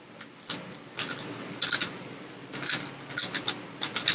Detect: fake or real real